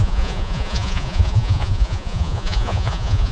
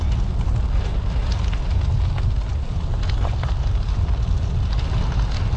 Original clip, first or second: second